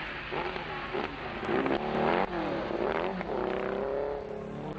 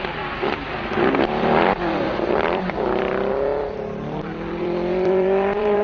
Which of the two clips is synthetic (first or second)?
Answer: second